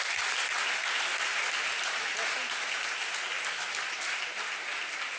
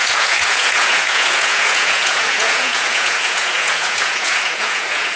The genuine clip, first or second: first